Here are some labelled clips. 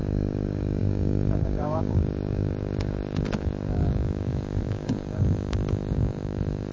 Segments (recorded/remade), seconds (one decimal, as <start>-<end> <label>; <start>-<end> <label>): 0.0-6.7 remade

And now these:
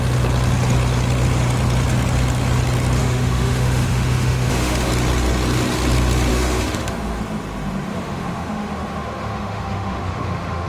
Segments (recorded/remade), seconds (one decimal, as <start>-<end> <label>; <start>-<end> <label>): 0.0-3.0 recorded; 3.0-4.9 remade; 4.9-6.3 recorded; 6.3-7.2 remade; 7.2-7.9 recorded; 7.9-10.7 remade

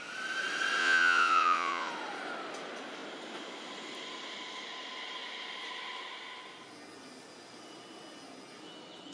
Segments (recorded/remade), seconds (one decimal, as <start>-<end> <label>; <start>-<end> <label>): 0.0-0.8 recorded; 0.8-1.9 remade; 1.9-9.1 recorded